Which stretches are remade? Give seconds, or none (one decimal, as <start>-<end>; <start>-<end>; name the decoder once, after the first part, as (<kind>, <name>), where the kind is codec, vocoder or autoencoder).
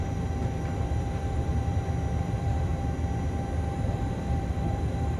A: 0.0-1.7 (vocoder, BigVGAN v2); 2.2-2.7; 3.9-5.2